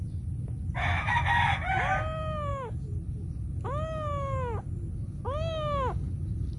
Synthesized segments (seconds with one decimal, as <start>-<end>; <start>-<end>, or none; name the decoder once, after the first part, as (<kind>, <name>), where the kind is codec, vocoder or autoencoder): none